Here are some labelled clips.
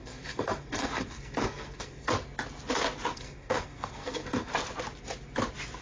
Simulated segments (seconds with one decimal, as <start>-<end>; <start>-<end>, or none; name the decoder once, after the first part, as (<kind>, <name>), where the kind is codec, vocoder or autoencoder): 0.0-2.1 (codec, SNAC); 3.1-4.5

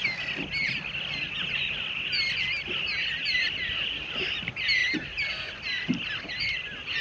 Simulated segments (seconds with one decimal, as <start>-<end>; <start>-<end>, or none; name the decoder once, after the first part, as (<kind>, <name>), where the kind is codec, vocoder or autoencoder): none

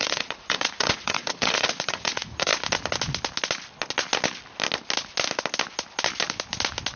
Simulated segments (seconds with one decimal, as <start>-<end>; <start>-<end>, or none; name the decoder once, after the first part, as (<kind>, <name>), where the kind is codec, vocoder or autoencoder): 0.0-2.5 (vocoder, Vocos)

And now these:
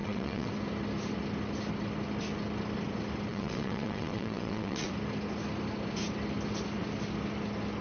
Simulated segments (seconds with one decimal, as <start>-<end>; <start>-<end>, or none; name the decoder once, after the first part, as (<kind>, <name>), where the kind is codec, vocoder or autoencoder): 0.0-0.5 (vocoder, WaveNeXt); 3.3-4.9

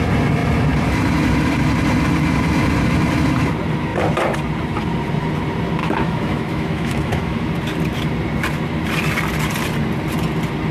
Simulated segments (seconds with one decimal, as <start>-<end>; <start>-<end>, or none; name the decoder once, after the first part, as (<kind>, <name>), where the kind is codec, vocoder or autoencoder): 5.8-7.5 (autoencoder, DAC-VAE)

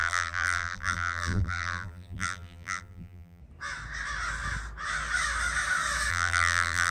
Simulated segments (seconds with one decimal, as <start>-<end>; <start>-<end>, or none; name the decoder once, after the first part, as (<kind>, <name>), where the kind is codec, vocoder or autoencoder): 0.0-3.4 (vocoder, BigVGAN v2); 6.1-6.9